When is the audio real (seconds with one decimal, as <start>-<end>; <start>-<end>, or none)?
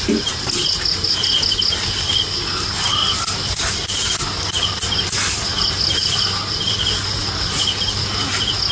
0.0-8.7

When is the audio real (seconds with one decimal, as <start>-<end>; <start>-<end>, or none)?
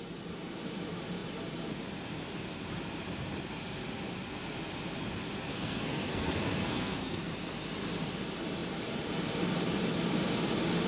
0.0-5.5; 7.3-10.9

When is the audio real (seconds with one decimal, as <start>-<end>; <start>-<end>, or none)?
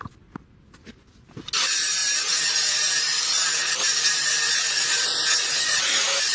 0.0-6.3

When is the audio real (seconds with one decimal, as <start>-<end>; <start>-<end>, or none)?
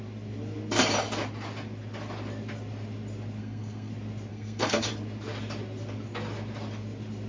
0.0-3.4; 3.9-4.3; 4.9-7.3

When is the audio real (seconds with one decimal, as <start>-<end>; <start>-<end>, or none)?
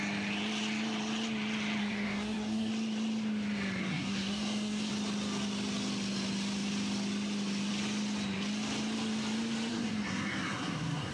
0.0-1.8; 2.7-3.8; 4.9-9.7